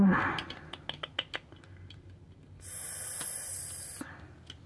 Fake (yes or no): no